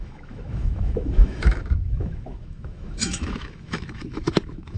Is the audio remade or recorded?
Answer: remade